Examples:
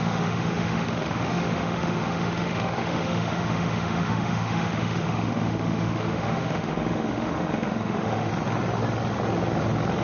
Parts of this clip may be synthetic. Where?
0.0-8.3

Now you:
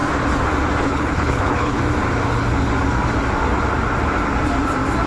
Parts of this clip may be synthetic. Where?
0.8-1.8

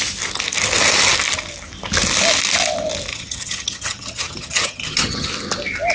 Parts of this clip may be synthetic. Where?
3.1-5.3

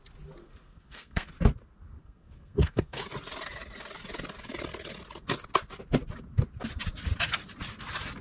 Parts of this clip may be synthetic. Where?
0.4-1.3; 2.0-3.0

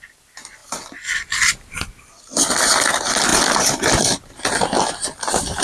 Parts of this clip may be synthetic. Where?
none